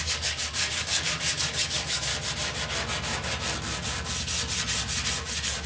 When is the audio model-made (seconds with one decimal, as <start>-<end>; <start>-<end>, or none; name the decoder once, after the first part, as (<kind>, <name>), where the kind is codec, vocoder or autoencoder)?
0.0-2.1 (codec, DAC)